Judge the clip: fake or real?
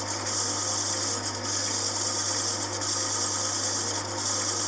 real